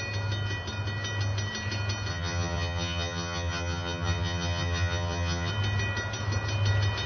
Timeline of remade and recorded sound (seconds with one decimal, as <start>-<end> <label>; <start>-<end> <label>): 0.0-2.1 recorded; 2.1-5.5 remade; 5.5-7.1 recorded